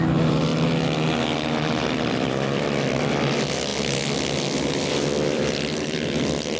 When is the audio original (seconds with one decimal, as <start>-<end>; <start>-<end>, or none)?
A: 0.5-2.0; 3.7-4.7